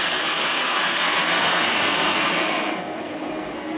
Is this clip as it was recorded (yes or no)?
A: no